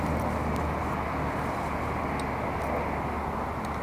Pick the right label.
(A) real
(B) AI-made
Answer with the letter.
A